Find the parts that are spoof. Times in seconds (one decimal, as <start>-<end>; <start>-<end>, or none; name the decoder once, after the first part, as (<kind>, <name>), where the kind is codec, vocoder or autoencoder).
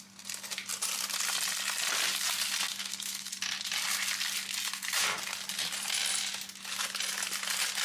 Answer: 2.8-3.3 (codec, SNAC)